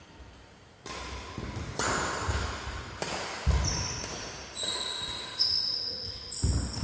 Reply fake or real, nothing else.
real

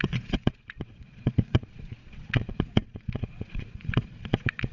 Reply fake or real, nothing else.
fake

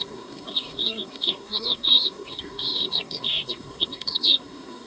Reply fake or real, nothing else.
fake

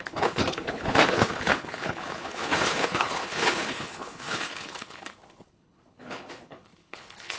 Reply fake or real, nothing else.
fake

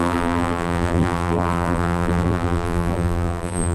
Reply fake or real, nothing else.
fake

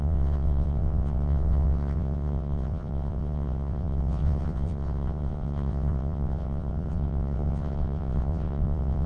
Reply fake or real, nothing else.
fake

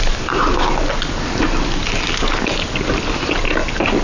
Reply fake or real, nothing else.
real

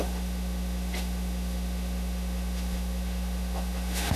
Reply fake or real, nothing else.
fake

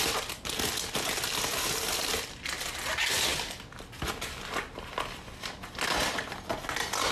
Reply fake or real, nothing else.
real